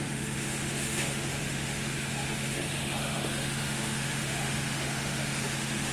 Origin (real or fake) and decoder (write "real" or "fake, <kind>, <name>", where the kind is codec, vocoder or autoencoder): fake, autoencoder, DAC-VAE